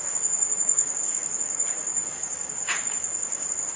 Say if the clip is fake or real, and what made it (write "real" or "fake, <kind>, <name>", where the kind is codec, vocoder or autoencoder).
fake, codec, DAC